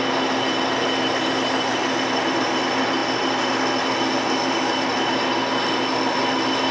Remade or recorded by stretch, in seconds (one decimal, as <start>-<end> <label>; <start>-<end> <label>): 0.0-6.7 recorded